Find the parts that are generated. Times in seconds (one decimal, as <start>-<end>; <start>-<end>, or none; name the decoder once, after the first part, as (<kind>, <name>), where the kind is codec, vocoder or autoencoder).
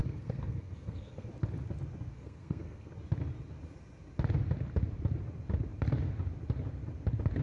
0.0-1.3 (codec, SNAC); 2.1-2.9